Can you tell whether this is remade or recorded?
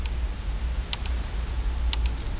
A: recorded